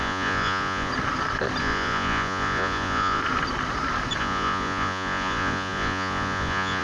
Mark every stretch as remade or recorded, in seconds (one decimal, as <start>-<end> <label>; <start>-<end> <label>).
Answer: 0.0-0.9 remade; 0.9-1.6 recorded; 1.6-3.2 remade; 3.2-4.2 recorded; 4.2-6.8 remade